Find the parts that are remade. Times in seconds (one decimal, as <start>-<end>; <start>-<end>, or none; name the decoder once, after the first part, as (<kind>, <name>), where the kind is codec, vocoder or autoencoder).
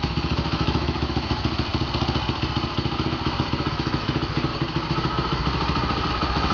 0.0-1.7 (autoencoder, DAC-VAE); 3.7-4.5; 6.1-6.5